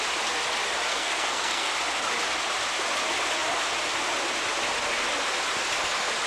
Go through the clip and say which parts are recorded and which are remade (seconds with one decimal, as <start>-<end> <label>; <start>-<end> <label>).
0.0-0.9 recorded; 0.9-1.7 remade; 1.7-6.3 recorded